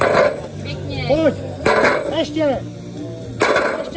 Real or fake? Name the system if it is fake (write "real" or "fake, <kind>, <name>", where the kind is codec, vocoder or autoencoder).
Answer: real